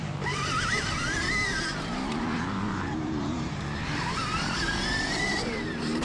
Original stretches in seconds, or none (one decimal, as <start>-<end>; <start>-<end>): 0.0-2.2